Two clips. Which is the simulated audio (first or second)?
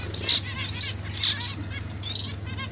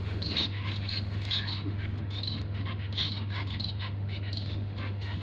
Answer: second